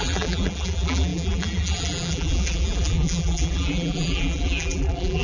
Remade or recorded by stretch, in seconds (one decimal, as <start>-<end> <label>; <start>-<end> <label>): 0.0-5.2 remade

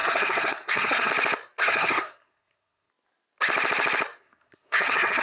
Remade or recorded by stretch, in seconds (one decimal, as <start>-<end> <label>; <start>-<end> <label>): 0.0-1.1 remade; 1.1-1.6 recorded; 1.6-2.9 remade; 2.9-4.2 recorded; 4.2-5.2 remade

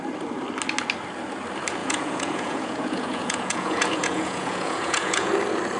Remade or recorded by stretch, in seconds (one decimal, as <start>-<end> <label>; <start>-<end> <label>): 0.0-1.8 recorded; 1.8-5.3 remade; 5.3-5.8 recorded

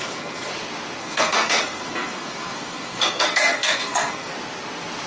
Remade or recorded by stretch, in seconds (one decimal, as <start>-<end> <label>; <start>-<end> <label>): 0.0-0.5 remade; 0.5-1.0 recorded; 1.0-4.3 remade; 4.3-5.1 recorded

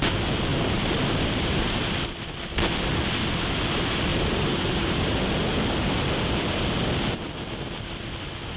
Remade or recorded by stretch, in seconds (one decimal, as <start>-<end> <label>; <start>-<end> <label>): 0.0-0.5 recorded; 0.5-1.8 remade; 1.8-4.1 recorded; 4.1-5.3 remade; 5.3-8.6 recorded

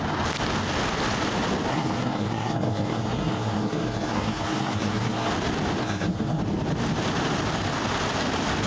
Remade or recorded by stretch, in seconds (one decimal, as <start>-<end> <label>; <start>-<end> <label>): 0.0-1.7 recorded; 1.7-5.3 remade; 5.3-5.8 recorded; 5.8-6.4 remade; 6.4-8.7 recorded